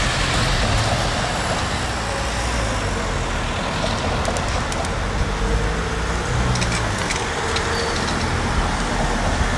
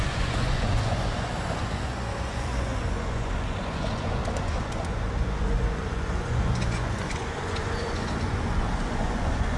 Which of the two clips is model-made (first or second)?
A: second